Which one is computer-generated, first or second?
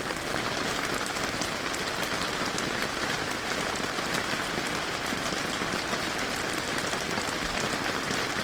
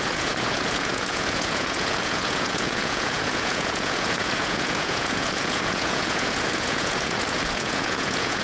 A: second